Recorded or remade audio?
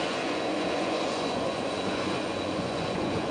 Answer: remade